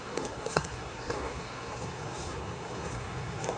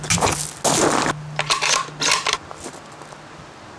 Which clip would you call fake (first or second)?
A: first